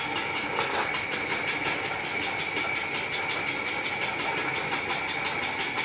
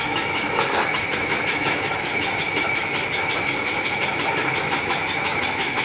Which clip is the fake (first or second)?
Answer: second